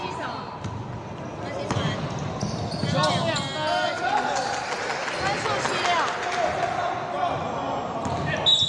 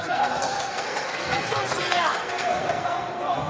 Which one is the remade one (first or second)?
second